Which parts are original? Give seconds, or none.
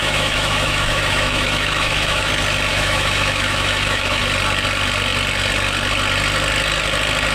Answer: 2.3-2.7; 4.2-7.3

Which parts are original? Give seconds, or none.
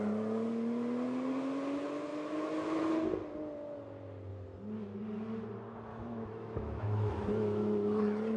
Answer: 0.0-2.1; 2.8-5.9; 8.0-8.4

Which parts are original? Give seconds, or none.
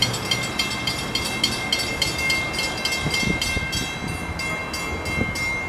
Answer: 1.1-5.7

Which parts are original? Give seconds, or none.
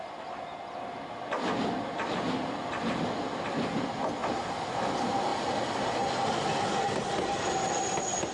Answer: 0.0-8.3